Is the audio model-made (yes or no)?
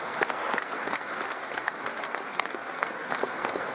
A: yes